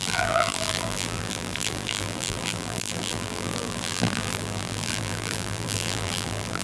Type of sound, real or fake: fake